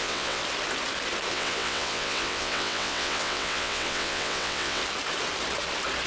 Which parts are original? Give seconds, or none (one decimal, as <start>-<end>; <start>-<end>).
0.4-1.3; 4.8-6.1